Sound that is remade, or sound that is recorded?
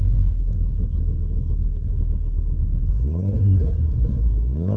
remade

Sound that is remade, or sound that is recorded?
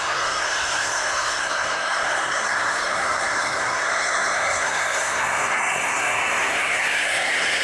remade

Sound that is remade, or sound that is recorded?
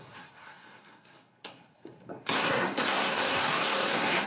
remade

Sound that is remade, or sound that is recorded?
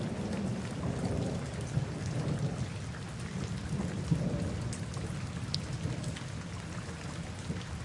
recorded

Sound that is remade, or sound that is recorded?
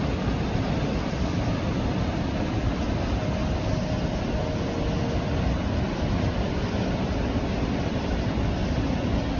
recorded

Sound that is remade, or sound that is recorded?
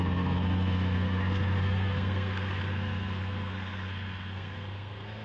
remade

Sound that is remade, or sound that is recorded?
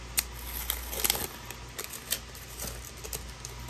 recorded